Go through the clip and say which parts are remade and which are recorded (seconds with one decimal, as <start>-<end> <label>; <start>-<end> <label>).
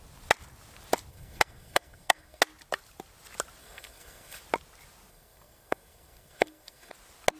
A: 0.0-1.1 recorded; 1.1-2.4 remade; 2.4-3.6 recorded; 3.6-4.4 remade; 4.4-5.1 recorded; 5.1-6.9 remade; 6.9-7.4 recorded